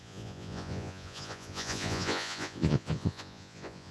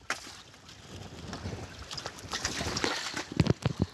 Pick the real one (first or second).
second